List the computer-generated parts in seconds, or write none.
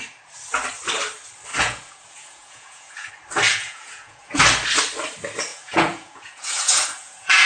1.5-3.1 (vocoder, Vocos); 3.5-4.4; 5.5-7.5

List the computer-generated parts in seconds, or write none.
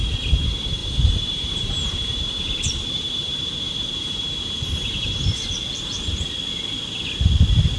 0.8-5.5 (vocoder, BigVGAN v2)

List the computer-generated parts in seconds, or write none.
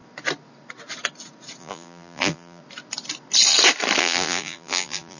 1.6-2.6 (vocoder, BigVGAN v2); 4.0-5.2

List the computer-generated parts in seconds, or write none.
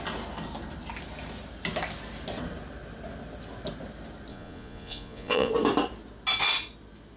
4.3-5.5 (vocoder, Vocos)